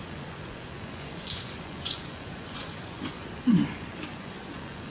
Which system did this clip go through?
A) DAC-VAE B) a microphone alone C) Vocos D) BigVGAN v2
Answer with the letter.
C